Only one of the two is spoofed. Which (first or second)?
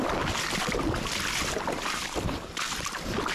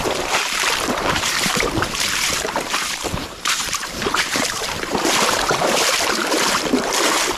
second